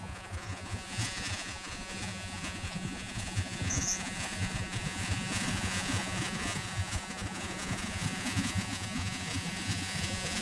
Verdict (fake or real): fake